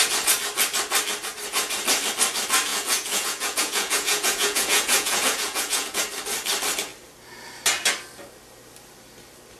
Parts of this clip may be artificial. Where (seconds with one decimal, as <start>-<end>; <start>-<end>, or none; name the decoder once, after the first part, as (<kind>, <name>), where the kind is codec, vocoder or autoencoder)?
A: 2.7-6.0 (vocoder, Vocos)